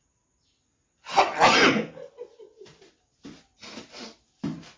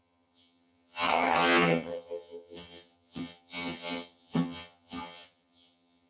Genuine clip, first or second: first